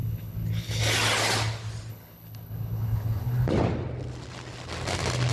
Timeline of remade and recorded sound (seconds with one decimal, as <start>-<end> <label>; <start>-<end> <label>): 0.0-0.8 remade; 0.8-1.9 recorded; 1.9-3.5 remade; 3.5-5.3 recorded